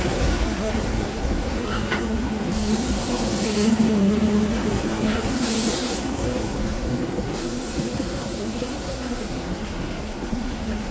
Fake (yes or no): yes